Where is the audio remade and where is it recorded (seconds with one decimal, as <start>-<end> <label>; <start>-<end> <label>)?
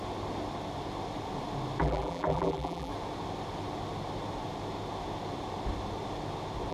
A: 0.0-1.8 recorded; 1.8-2.9 remade; 2.9-6.7 recorded